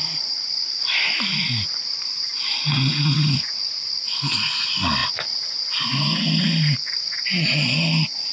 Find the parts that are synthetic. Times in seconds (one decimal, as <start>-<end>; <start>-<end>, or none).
none